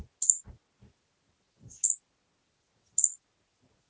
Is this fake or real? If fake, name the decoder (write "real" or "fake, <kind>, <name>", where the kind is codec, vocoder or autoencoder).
real